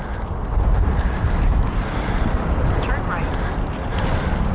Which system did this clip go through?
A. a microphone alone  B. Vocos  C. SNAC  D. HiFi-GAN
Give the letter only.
A